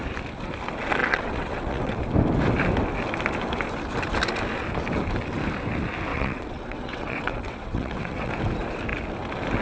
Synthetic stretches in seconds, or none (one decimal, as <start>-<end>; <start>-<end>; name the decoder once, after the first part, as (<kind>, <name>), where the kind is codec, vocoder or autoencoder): 1.0-2.0 (vocoder, WaveNeXt); 6.1-8.3